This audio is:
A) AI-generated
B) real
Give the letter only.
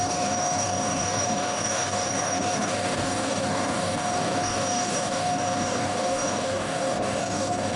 A